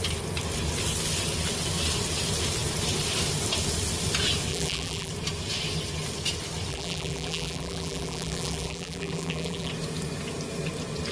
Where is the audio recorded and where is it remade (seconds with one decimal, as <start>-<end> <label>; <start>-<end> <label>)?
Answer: 0.0-4.5 recorded; 4.5-5.1 remade; 5.1-6.7 recorded; 6.7-9.7 remade; 9.7-11.1 recorded

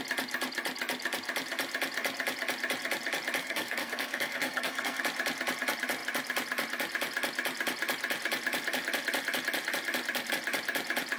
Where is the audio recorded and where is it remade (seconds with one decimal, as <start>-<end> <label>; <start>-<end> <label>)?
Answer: 0.0-3.4 recorded; 3.4-5.0 remade; 5.0-11.2 recorded

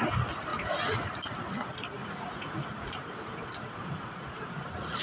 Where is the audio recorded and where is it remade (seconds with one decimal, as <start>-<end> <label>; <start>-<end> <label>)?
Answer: 0.0-0.5 recorded; 0.5-1.2 remade; 1.2-2.0 recorded; 2.0-5.0 remade

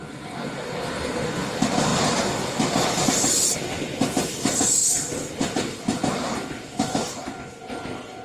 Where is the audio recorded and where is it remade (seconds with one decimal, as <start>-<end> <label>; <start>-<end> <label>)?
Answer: 0.0-4.8 recorded; 4.8-7.4 remade; 7.4-8.2 recorded

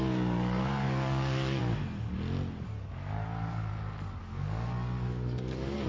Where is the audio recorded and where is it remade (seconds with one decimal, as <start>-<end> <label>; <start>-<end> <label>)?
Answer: 0.0-1.6 remade; 1.6-2.6 recorded; 2.6-3.7 remade; 3.7-4.2 recorded; 4.2-5.9 remade

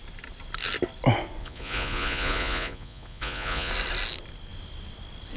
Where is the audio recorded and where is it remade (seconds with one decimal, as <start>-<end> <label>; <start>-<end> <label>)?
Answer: 0.0-1.4 recorded; 1.4-3.7 remade; 3.7-5.4 recorded